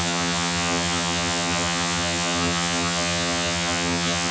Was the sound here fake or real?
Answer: fake